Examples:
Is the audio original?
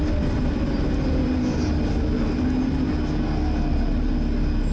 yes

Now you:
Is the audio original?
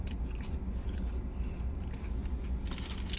yes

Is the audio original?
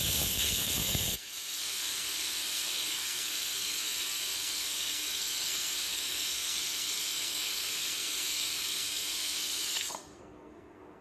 no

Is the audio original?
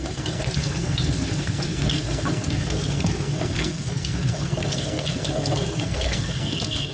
no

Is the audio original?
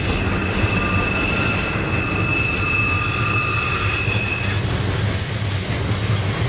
yes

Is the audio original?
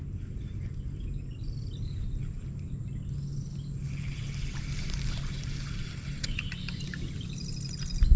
yes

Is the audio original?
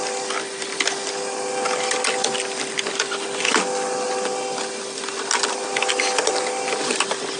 yes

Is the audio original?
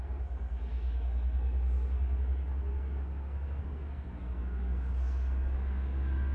no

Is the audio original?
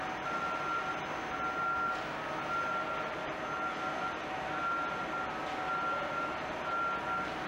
yes